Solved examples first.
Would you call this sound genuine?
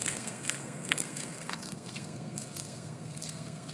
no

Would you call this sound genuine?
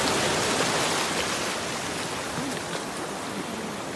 yes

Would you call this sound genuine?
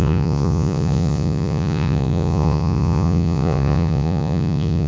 no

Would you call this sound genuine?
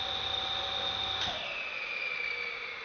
yes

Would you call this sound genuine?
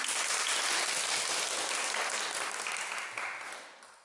yes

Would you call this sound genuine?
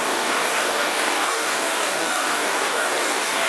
no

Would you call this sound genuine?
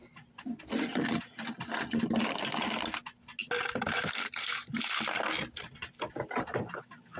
yes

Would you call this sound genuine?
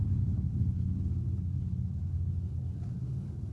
no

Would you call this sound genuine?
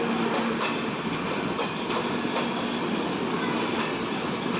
yes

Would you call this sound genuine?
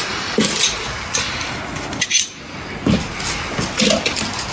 yes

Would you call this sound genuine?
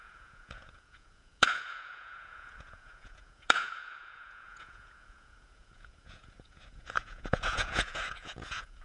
no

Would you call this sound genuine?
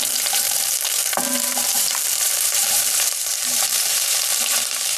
no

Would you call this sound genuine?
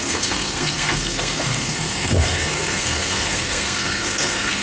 no